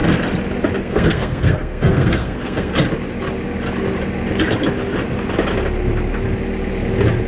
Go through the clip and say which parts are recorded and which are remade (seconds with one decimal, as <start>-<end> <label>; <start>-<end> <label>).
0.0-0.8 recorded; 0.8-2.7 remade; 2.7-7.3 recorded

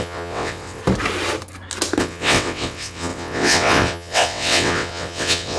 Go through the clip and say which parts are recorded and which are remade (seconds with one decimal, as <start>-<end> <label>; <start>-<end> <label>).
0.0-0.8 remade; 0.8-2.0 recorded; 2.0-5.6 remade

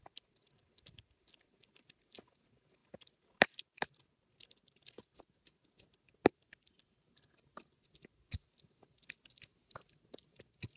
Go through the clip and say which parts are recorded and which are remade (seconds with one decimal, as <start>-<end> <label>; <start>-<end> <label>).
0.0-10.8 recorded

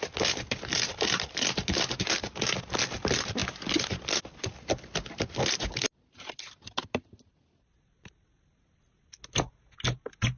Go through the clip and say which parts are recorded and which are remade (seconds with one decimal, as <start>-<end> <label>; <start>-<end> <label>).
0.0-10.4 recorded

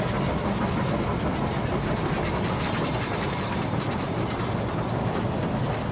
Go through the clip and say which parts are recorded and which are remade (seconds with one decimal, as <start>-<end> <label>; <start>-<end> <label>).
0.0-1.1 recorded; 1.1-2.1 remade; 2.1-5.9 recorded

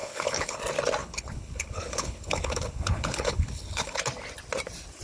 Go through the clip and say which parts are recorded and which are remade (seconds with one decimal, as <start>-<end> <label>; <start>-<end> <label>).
0.0-0.6 remade; 0.6-1.0 recorded; 1.0-4.0 remade; 4.0-5.0 recorded